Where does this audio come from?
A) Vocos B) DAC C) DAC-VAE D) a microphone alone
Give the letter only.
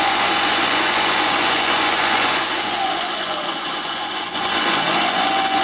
A